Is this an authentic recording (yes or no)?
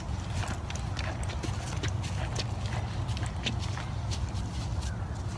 yes